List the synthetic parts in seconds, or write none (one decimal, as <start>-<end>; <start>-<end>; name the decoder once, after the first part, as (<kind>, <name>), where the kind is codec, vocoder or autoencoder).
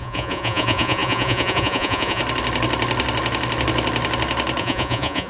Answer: 0.0-2.2 (vocoder, Vocos); 4.6-5.3